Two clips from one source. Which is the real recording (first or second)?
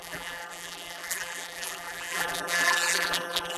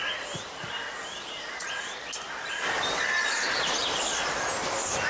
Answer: second